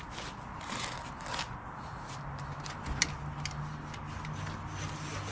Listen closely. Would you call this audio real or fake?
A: real